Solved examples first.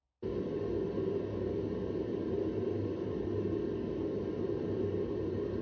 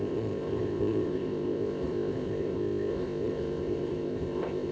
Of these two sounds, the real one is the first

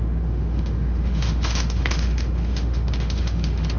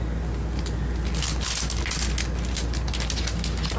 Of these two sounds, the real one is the second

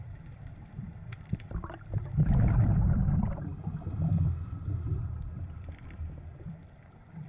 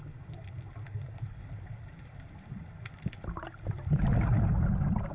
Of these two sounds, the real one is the second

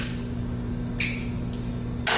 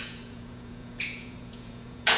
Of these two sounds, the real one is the first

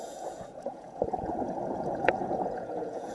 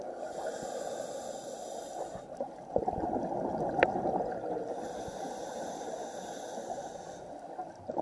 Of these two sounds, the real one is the second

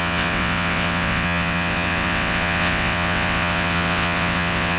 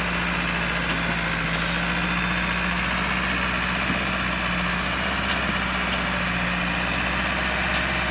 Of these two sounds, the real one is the second